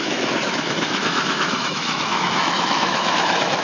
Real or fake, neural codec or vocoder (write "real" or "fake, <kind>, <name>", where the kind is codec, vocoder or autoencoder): fake, autoencoder, DAC-VAE